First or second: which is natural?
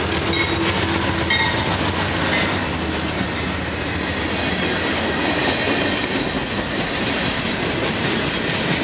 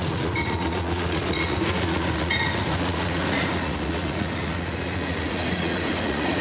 first